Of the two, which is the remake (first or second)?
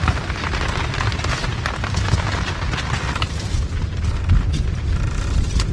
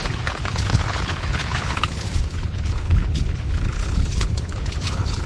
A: second